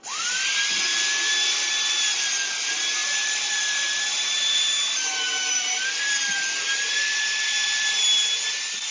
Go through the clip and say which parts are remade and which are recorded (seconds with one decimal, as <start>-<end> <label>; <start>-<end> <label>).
0.0-0.9 recorded; 0.9-1.5 remade; 1.5-3.0 recorded; 3.0-8.0 remade; 8.0-8.9 recorded